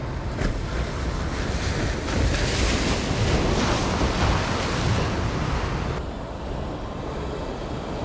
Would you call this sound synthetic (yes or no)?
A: no